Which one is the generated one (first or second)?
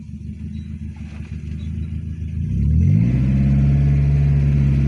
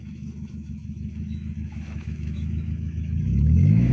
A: second